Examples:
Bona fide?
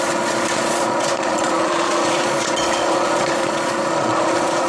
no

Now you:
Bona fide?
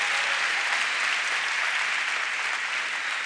yes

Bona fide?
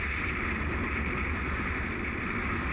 no